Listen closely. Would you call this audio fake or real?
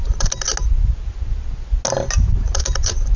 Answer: real